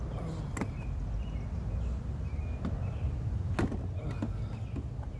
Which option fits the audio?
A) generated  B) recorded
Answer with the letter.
B